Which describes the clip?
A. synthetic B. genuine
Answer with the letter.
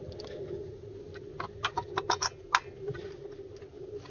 B